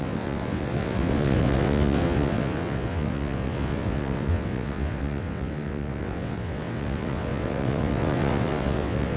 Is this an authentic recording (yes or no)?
no